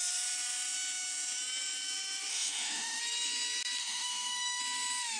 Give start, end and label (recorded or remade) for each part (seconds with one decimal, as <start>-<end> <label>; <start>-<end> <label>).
0.0-2.3 recorded; 2.3-3.0 remade; 3.0-3.8 recorded; 3.8-4.6 remade; 4.6-5.2 recorded